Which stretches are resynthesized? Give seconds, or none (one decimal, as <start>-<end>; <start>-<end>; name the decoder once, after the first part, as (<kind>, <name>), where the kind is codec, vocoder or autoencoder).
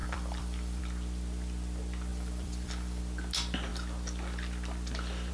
0.0-0.8 (vocoder, BigVGAN v2); 2.1-3.0